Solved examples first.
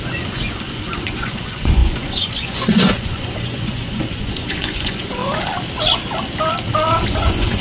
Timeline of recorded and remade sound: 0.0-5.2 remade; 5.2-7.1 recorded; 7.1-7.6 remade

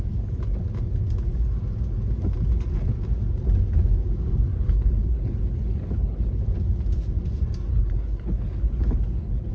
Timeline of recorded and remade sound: 0.0-4.5 recorded; 4.5-6.4 remade; 6.4-7.7 recorded; 7.7-9.5 remade

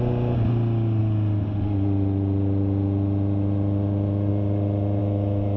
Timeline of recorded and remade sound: 0.0-5.0 recorded; 5.0-5.6 remade

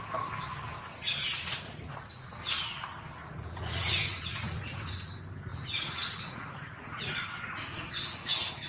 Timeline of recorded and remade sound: 0.0-1.3 recorded; 1.3-2.3 remade; 2.3-3.2 recorded; 3.2-5.1 remade; 5.1-5.5 recorded; 5.5-7.9 remade; 7.9-8.7 recorded